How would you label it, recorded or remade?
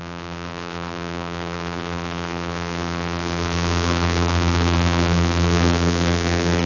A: remade